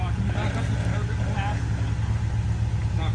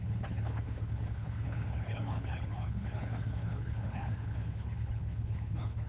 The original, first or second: first